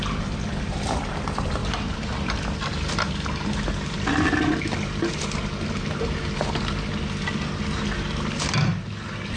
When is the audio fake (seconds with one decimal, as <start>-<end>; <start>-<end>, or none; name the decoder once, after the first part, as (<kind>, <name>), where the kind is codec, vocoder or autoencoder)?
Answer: 1.6-2.3 (vocoder, BigVGAN v2)

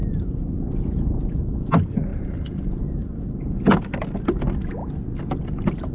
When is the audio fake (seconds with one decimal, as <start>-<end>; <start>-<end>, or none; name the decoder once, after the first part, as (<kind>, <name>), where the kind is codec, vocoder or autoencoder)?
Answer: 2.1-2.8 (vocoder, BigVGAN v2)

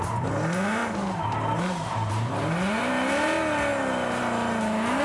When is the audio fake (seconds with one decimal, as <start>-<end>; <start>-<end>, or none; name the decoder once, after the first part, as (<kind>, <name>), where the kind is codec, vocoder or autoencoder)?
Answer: 0.8-2.9 (vocoder, BigVGAN v2)

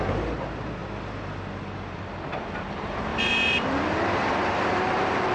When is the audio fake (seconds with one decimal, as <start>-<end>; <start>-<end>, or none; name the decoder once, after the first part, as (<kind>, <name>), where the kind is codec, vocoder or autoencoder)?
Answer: 0.0-0.8 (vocoder, BigVGAN v2); 2.6-5.3